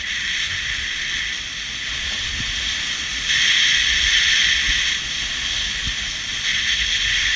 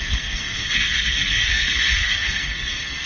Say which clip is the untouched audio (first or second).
first